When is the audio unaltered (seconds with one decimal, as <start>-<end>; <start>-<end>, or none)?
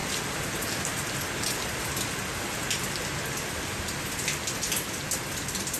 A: 0.0-5.8